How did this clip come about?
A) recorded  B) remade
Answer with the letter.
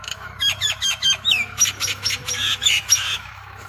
B